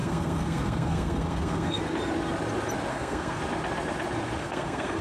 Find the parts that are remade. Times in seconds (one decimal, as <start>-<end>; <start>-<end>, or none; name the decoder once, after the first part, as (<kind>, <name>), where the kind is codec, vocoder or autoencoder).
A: 0.0-1.8 (codec, SNAC); 2.9-3.4; 4.4-5.0